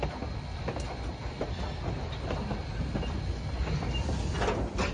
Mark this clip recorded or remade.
recorded